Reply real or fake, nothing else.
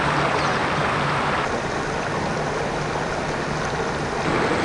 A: real